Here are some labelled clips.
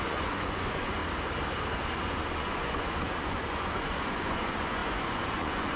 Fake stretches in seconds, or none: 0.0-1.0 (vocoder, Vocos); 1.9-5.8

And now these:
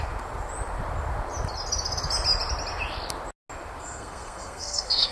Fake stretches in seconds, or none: 3.8-5.1 (codec, SNAC)